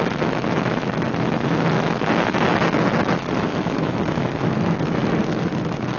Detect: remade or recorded remade